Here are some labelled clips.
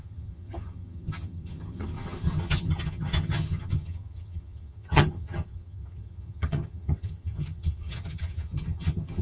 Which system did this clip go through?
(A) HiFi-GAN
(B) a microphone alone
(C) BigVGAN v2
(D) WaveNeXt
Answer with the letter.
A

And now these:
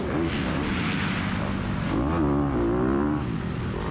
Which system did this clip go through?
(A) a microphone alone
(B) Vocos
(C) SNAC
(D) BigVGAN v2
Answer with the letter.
A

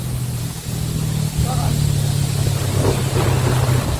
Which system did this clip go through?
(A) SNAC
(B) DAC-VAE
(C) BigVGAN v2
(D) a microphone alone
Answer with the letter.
D